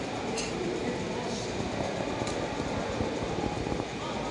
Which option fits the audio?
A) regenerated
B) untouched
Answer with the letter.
B